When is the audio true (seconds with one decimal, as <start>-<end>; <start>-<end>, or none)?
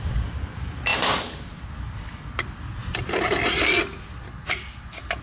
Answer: 0.0-5.2